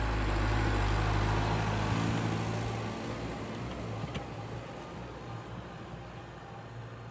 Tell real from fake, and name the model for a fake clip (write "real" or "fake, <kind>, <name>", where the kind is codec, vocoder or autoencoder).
real